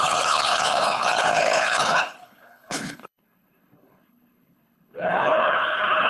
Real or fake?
fake